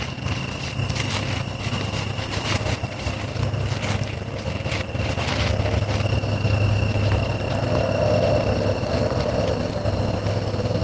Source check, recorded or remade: recorded